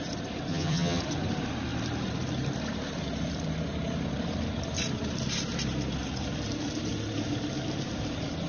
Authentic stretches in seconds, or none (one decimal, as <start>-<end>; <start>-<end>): 0.0-0.5; 1.0-8.5